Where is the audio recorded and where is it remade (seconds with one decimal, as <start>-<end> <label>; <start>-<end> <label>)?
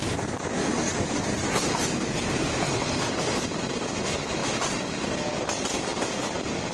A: 0.0-0.6 recorded; 0.6-1.2 remade; 1.2-6.7 recorded